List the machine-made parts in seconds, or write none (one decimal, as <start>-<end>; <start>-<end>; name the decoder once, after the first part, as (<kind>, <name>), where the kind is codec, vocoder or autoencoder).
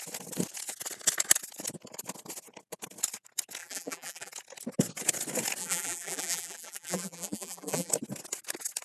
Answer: 3.6-4.3 (vocoder, BigVGAN v2); 5.6-7.9